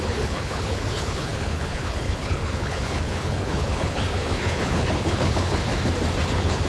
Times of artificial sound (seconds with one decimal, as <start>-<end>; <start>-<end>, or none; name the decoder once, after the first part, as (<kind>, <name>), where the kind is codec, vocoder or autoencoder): 0.0-5.7 (codec, HILCodec); 6.3-6.7